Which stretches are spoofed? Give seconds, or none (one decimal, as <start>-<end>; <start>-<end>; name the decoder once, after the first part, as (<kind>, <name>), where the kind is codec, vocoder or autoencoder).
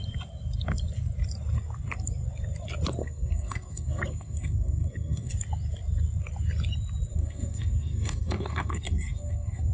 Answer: 3.0-5.3 (codec, SNAC); 7.1-9.7